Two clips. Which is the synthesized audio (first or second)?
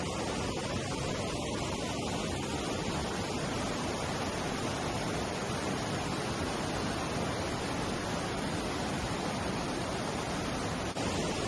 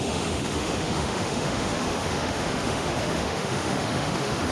second